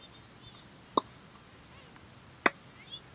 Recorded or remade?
recorded